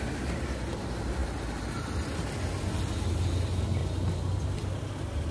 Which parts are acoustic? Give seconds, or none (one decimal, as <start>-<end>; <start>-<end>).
0.0-5.3